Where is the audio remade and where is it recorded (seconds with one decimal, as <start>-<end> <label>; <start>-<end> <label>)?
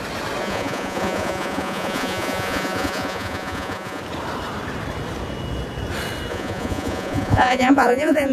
0.0-0.4 recorded; 0.4-4.0 remade; 4.0-6.3 recorded; 6.3-8.3 remade